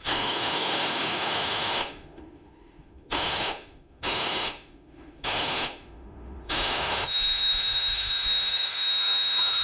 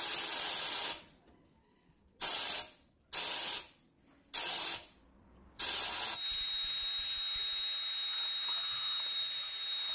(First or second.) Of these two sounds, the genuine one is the second